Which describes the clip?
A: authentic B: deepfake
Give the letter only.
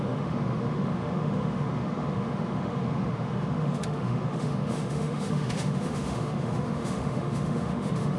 B